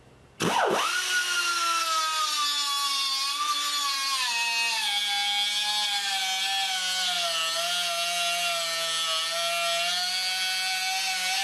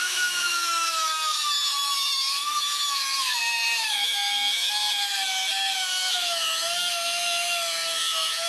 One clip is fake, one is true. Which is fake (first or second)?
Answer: second